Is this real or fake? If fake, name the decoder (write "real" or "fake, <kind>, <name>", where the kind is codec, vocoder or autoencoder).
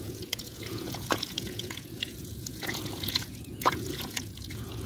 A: fake, vocoder, Vocos